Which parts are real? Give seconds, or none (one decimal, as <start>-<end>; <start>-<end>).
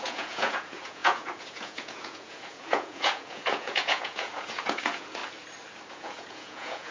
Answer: 5.2-5.9